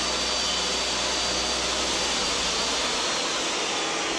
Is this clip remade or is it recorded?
recorded